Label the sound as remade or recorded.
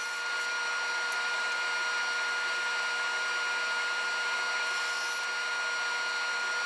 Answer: recorded